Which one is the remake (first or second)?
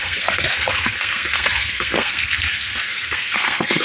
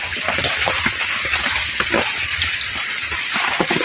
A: first